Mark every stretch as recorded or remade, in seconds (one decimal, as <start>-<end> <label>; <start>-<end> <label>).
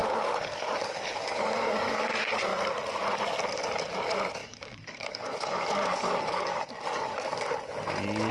0.0-2.1 remade; 2.1-4.4 recorded; 4.4-7.5 remade; 7.5-8.3 recorded